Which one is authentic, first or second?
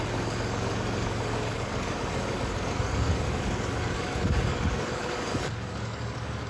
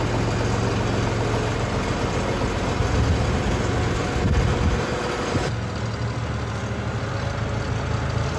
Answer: second